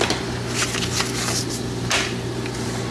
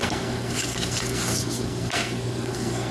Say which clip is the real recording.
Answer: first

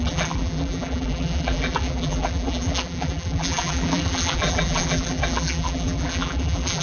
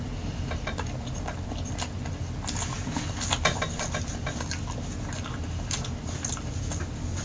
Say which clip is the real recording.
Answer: second